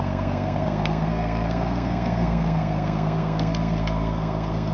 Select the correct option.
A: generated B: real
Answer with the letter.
A